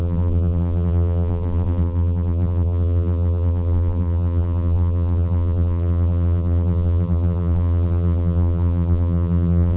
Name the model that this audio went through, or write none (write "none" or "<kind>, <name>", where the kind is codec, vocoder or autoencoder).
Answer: vocoder, BigVGAN v2